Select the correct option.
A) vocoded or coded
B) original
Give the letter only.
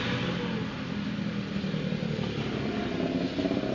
B